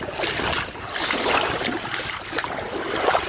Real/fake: real